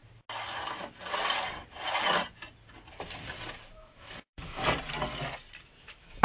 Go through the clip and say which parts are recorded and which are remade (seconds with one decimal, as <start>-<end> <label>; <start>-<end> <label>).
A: 0.0-3.7 recorded; 3.7-4.6 remade; 4.6-5.6 recorded; 5.6-6.2 remade